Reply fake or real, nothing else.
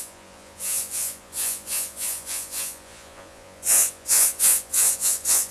fake